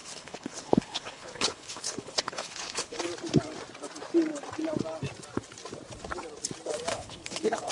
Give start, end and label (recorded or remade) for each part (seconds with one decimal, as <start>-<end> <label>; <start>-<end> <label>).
0.0-3.0 remade; 3.0-6.9 recorded; 6.9-7.7 remade